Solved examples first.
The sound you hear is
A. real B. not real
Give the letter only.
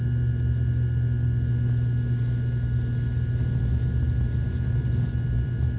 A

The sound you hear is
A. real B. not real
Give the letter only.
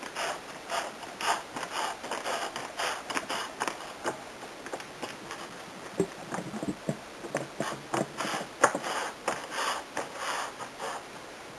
A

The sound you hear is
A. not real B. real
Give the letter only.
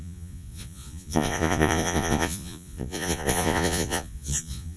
A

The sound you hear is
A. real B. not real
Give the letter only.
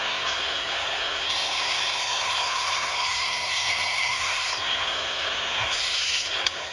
B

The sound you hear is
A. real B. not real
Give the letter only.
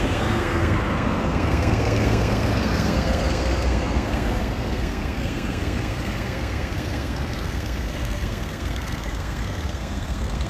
B